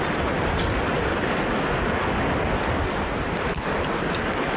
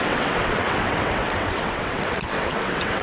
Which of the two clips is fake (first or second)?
second